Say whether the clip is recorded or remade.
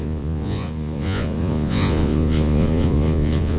remade